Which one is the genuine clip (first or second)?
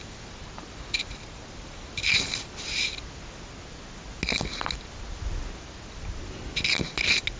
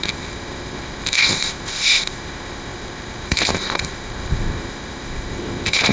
first